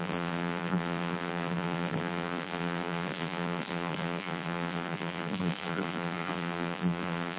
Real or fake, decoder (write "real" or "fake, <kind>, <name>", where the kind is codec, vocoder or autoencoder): fake, vocoder, BigVGAN v2